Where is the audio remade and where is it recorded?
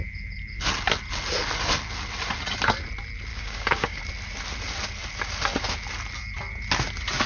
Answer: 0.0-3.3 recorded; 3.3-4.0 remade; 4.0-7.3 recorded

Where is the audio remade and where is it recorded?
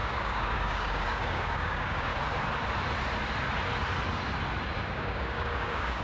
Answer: 0.0-2.1 remade; 2.1-4.9 recorded; 4.9-6.0 remade